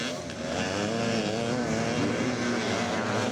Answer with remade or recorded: recorded